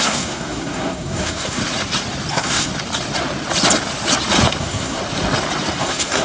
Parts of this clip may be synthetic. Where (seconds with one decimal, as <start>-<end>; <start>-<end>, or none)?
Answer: 0.0-1.6; 2.3-2.7; 4.6-5.0; 5.8-6.2